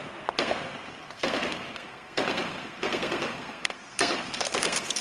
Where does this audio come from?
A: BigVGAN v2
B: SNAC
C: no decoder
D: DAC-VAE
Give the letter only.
B